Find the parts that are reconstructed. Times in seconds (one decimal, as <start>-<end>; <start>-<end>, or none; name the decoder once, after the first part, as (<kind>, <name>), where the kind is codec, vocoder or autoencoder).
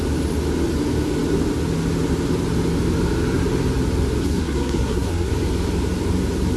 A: 4.2-5.3 (codec, SNAC)